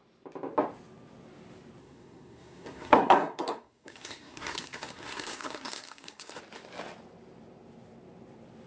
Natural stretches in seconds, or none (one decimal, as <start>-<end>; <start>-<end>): 0.0-1.8; 6.4-8.7